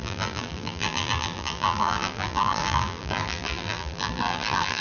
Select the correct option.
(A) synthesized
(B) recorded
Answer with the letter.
A